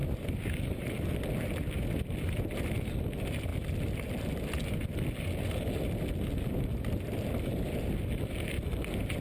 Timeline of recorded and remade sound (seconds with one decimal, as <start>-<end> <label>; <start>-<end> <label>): 0.0-9.2 recorded